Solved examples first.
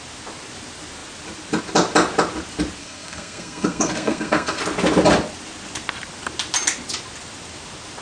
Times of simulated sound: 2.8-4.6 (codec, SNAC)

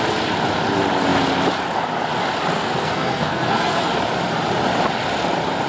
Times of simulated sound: 2.5-3.9 (codec, SNAC)

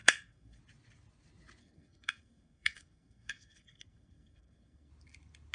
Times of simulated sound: 0.0-0.6 (codec, SNAC); 1.6-4.9

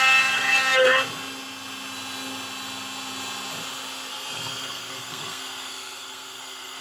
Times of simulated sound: 4.1-6.8 (codec, SNAC)

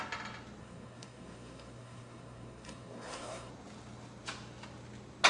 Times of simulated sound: 0.6-3.5 (codec, SNAC)

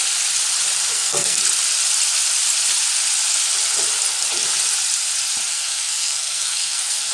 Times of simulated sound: 0.9-1.4 (codec, SNAC); 5.5-7.1

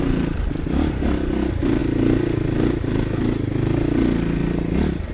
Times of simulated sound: none